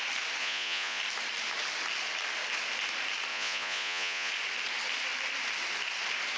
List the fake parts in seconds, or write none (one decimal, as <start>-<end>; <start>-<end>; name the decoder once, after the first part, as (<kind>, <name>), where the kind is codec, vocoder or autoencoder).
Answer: 0.4-1.0 (vocoder, Vocos); 3.3-4.3